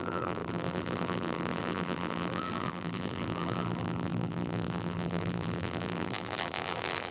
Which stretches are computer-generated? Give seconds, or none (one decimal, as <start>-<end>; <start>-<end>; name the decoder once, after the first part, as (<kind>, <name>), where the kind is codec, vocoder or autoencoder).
0.0-7.1 (vocoder, BigVGAN v2)